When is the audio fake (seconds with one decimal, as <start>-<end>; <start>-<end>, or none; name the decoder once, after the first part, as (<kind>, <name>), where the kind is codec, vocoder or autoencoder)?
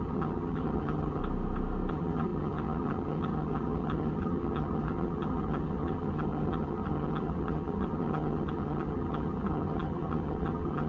0.0-1.2 (vocoder, HiFi-GAN); 1.9-10.9